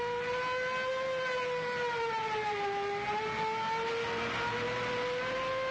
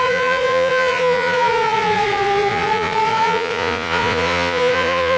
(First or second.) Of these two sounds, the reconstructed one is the second